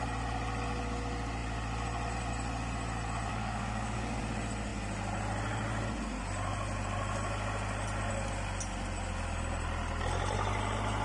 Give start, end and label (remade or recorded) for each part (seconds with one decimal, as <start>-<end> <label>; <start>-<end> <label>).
0.0-3.3 recorded; 3.3-4.2 remade; 4.2-11.0 recorded

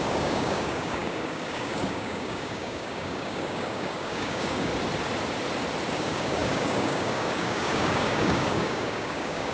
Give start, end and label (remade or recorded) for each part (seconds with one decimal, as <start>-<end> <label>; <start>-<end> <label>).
0.0-4.7 remade; 4.7-5.9 recorded; 5.9-9.5 remade

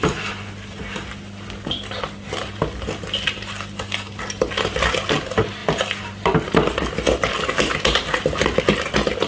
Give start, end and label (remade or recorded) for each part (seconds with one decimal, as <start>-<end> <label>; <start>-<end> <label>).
0.0-9.3 recorded

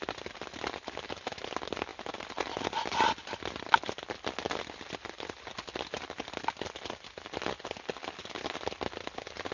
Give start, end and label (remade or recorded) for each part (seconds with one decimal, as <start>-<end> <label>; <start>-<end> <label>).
0.0-9.5 recorded

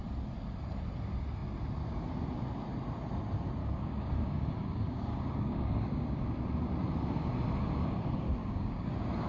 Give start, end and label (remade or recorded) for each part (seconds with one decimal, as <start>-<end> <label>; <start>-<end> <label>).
0.0-3.6 recorded; 3.6-6.2 remade; 6.2-8.4 recorded; 8.4-8.9 remade; 8.9-9.3 recorded

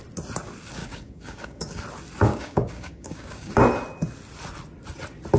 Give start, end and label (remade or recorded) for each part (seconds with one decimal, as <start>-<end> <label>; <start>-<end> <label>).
0.0-0.8 recorded; 0.8-1.8 remade; 1.8-2.3 recorded; 2.3-3.5 remade; 3.5-5.4 recorded

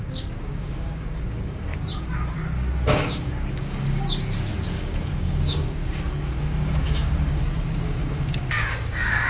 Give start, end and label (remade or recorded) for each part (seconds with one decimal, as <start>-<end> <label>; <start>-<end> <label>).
0.0-1.7 remade; 1.7-3.0 recorded; 3.0-9.3 remade